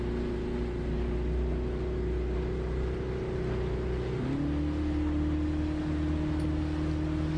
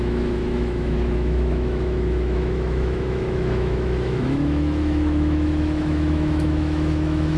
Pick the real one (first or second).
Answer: first